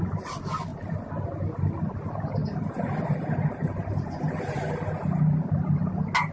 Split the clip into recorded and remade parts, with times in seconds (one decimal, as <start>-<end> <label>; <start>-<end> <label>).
0.0-6.3 recorded